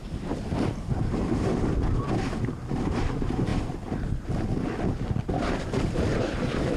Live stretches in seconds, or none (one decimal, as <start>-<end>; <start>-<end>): 1.5-2.0; 3.5-5.6